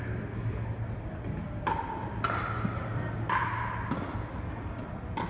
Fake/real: real